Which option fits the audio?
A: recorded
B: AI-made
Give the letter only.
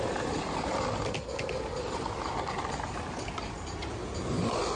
A